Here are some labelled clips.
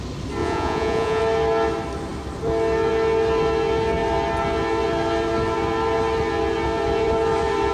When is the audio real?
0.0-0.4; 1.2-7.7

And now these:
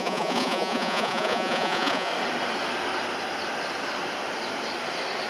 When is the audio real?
2.1-5.3

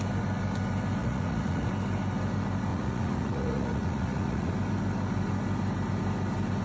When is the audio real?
0.0-1.0; 1.7-2.7; 4.5-6.6